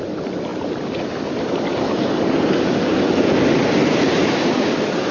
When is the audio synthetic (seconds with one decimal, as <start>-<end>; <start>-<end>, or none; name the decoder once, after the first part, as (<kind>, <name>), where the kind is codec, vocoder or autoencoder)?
none